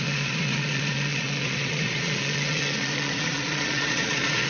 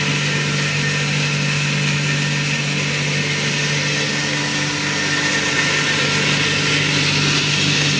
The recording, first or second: second